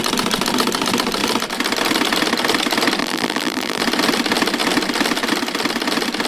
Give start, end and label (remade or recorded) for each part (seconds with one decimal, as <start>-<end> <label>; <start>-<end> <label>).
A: 0.0-3.0 recorded; 3.0-3.8 remade; 3.8-6.3 recorded